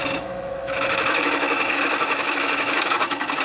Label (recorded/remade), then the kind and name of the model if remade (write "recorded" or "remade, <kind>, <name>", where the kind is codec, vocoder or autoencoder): remade, autoencoder, DAC-VAE